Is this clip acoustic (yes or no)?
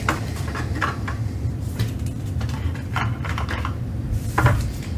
no